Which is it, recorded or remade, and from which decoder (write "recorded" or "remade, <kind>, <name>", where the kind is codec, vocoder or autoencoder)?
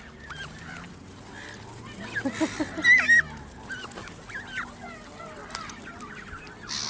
recorded